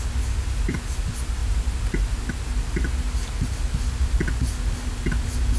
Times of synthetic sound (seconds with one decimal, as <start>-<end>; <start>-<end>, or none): none